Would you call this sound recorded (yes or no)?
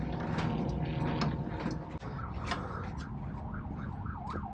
yes